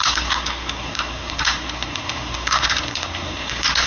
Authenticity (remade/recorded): remade